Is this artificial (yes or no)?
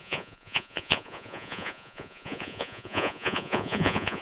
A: yes